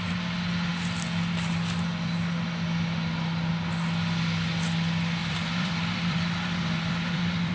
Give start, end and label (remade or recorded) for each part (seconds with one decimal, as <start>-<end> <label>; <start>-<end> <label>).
0.0-5.2 recorded; 5.2-7.5 remade